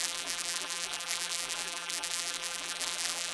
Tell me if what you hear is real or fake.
fake